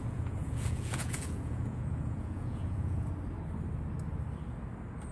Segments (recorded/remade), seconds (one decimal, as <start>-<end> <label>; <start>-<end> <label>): 0.0-3.1 remade; 3.1-5.1 recorded

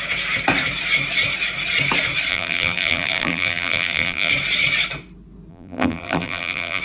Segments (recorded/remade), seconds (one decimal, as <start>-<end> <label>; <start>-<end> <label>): 0.0-2.3 recorded; 2.3-4.3 remade; 4.3-5.5 recorded; 5.5-6.8 remade

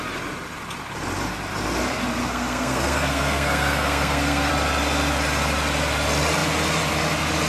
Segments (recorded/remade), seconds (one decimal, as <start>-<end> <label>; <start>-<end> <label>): 0.0-2.2 recorded; 2.2-4.5 remade; 4.5-7.5 recorded

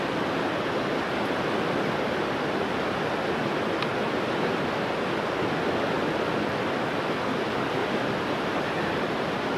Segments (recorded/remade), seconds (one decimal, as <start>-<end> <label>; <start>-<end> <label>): 0.0-7.8 recorded; 7.8-9.6 remade

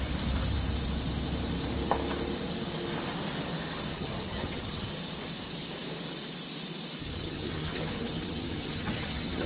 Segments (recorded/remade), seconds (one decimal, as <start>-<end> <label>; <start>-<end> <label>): 0.0-3.9 recorded; 3.9-4.9 remade; 4.9-7.0 recorded; 7.0-9.5 remade